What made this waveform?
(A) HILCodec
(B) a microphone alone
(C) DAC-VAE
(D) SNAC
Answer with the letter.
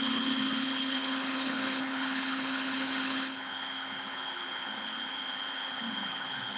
A